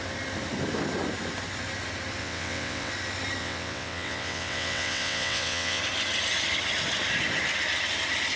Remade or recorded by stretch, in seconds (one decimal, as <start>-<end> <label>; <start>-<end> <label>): 0.0-2.2 recorded; 2.2-2.9 remade; 2.9-3.4 recorded; 3.4-5.8 remade; 5.8-8.4 recorded